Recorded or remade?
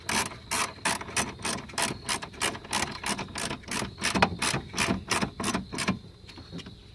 recorded